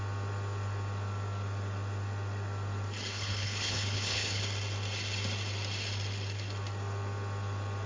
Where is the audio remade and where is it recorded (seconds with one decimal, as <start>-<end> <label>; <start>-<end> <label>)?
0.0-3.1 recorded; 3.1-4.4 remade; 4.4-7.9 recorded